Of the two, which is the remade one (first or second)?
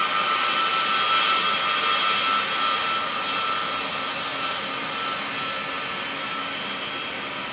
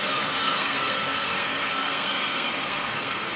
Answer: second